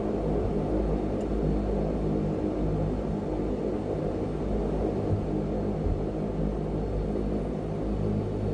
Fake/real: real